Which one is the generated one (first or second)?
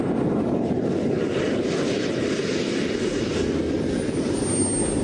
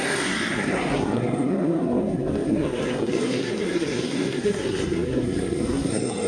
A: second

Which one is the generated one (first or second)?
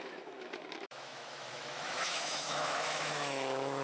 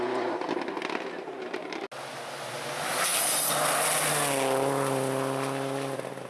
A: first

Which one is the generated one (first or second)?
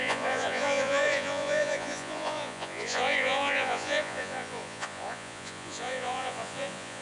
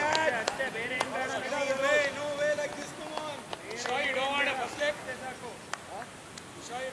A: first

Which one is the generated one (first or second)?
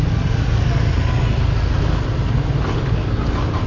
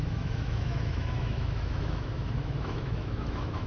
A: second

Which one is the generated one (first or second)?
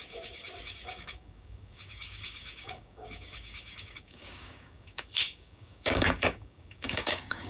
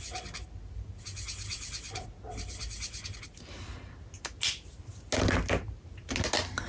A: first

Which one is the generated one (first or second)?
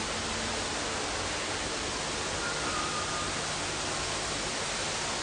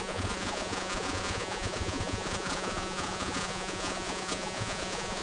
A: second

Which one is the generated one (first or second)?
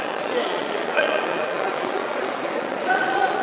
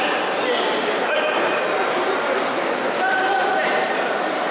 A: first